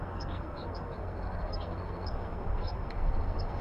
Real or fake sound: fake